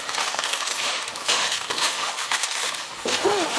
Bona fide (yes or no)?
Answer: no